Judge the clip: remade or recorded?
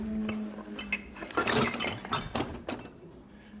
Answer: recorded